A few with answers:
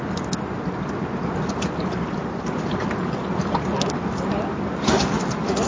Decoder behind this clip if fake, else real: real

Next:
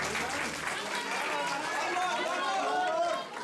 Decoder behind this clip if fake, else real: real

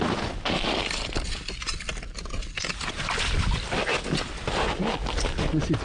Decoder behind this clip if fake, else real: real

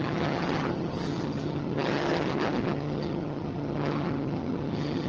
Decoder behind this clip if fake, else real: fake, vocoder, HiFi-GAN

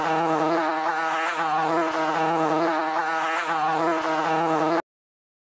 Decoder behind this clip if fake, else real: real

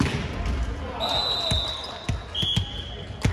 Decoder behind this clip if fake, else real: real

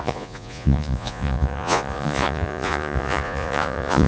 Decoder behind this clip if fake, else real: fake, vocoder, Vocos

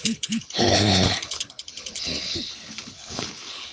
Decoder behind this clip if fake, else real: fake, codec, HILCodec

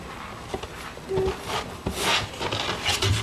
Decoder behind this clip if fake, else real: real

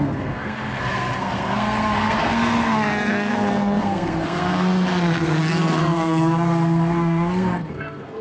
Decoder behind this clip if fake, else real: fake, codec, SNAC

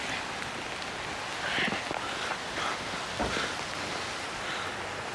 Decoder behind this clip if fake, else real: real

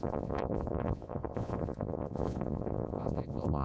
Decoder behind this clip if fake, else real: fake, vocoder, Vocos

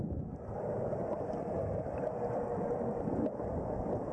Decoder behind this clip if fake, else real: real